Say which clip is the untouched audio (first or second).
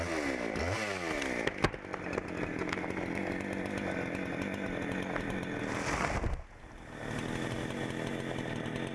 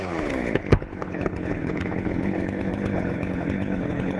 first